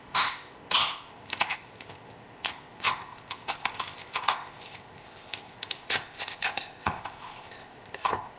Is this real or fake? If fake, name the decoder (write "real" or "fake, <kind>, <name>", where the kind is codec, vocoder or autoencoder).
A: fake, codec, ZipCodec